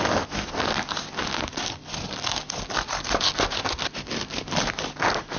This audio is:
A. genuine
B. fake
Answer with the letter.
A